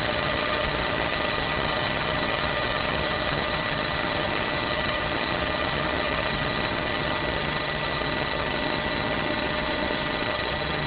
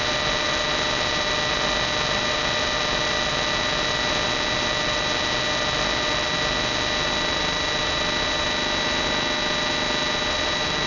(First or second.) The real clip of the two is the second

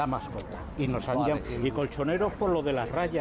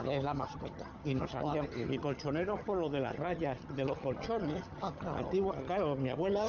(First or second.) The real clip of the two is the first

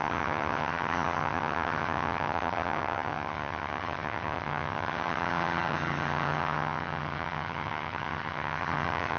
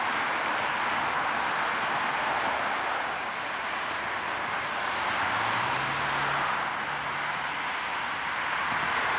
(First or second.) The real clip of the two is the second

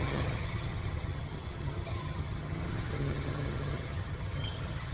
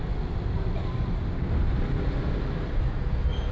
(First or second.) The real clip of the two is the second